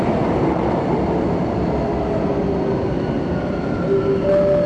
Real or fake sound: real